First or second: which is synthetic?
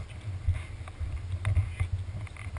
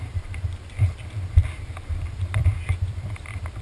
second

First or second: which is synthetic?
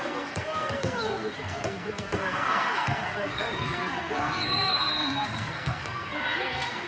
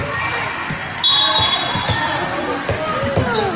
first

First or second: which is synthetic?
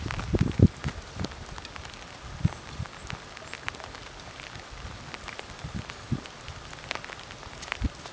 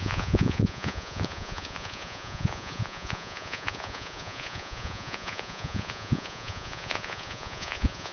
second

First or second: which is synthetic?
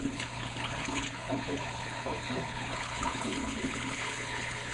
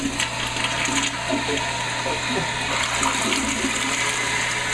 first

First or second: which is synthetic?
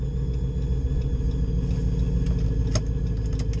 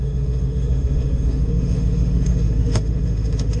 second